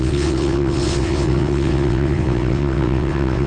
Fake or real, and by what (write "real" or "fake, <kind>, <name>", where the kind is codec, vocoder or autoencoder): fake, vocoder, WaveNeXt